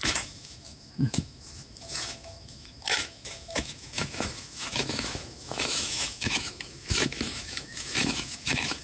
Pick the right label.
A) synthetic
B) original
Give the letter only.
A